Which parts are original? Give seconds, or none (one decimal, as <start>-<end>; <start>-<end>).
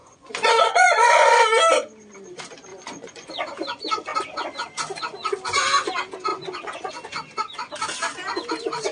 1.4-2.7; 3.3-6.3; 6.9-8.9